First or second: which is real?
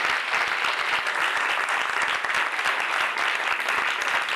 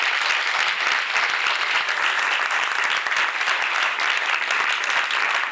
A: first